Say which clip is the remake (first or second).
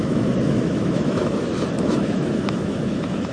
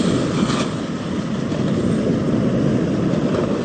first